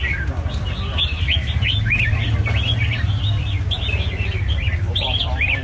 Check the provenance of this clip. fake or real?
real